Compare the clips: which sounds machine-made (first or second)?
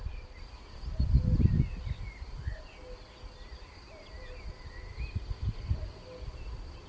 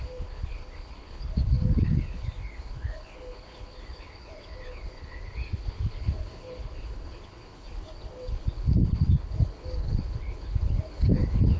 second